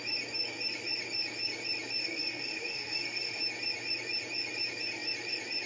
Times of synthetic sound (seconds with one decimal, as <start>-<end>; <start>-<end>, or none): 2.0-3.4